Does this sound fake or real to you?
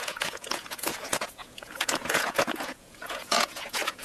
fake